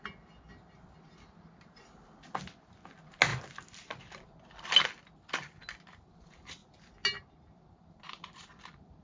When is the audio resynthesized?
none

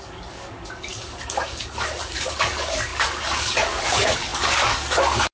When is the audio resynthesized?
0.0-5.3 (codec, DAC)